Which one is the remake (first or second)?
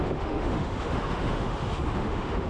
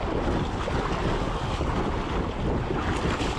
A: first